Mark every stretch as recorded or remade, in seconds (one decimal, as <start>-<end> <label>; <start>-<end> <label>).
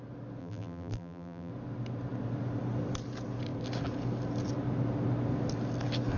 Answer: 0.0-0.4 recorded; 0.4-1.5 remade; 1.5-6.2 recorded